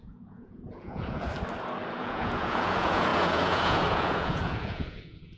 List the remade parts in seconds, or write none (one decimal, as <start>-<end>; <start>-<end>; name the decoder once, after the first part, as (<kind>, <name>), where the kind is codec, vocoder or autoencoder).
0.0-1.3 (vocoder, Vocos); 2.0-5.4